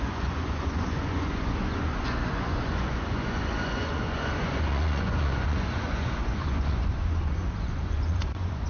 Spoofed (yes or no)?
yes